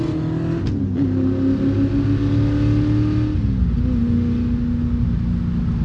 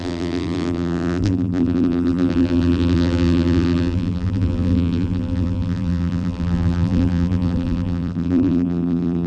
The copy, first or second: second